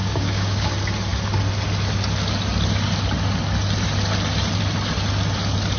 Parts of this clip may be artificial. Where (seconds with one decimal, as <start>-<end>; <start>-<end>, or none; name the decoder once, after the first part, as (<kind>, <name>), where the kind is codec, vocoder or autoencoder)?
0.0-0.7 (codec, DAC)